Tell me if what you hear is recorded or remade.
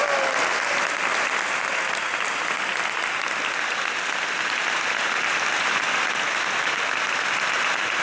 recorded